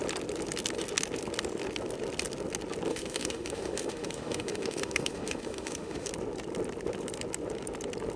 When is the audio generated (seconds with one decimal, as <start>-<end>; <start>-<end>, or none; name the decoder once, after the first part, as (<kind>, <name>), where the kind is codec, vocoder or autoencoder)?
2.9-6.1 (autoencoder, DAC-VAE)